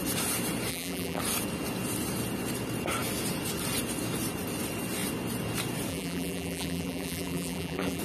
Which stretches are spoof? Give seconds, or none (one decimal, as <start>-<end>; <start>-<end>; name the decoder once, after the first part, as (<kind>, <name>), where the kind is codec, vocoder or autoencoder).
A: 0.7-1.2 (vocoder, BigVGAN v2); 5.9-8.0